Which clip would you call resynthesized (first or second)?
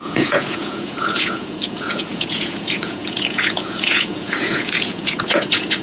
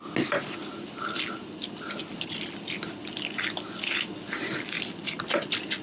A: first